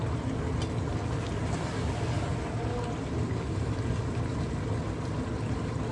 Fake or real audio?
real